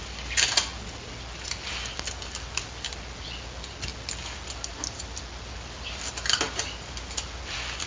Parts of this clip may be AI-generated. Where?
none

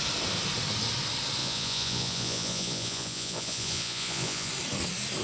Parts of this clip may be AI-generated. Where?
1.4-4.5